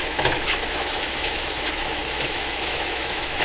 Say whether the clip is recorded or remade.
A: remade